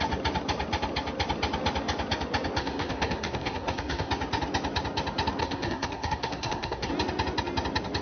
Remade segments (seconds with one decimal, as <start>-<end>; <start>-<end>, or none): 2.6-4.1; 5.4-6.9